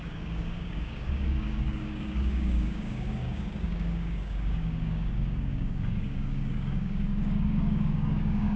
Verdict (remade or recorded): remade